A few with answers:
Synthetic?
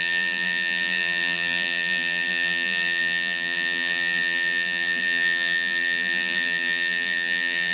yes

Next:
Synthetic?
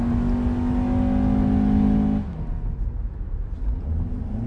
no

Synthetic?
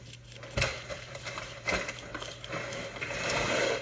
yes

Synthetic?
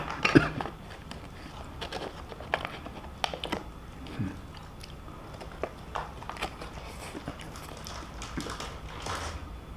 no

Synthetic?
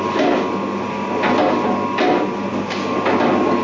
no